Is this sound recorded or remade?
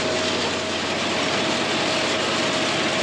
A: recorded